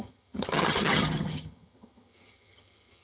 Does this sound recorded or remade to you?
remade